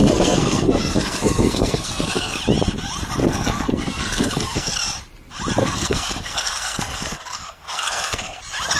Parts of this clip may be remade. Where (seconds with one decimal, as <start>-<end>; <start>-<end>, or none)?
0.0-2.4; 3.2-4.7; 5.6-8.4